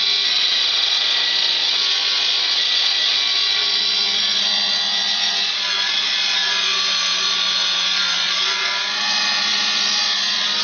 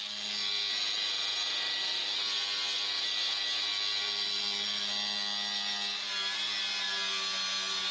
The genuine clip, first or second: second